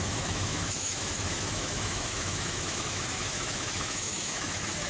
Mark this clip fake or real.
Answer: fake